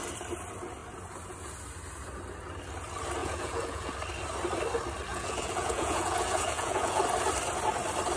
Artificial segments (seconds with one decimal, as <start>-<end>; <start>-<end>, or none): 3.2-3.9; 5.1-7.0